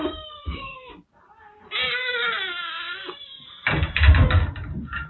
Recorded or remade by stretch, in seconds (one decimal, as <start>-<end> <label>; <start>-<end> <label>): 0.0-0.4 recorded; 0.4-0.9 remade; 0.9-5.1 recorded